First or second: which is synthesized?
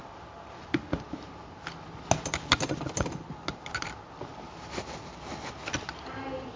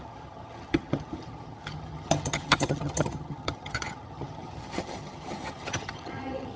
second